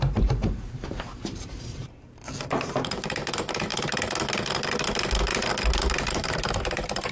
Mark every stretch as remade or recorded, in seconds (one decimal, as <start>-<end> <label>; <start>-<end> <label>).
0.0-3.7 remade; 3.7-6.1 recorded; 6.1-7.1 remade